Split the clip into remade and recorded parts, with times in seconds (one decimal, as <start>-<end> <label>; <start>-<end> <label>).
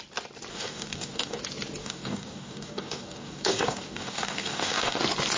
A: 0.0-0.5 recorded; 0.5-1.4 remade; 1.4-1.8 recorded; 1.8-5.0 remade; 5.0-5.4 recorded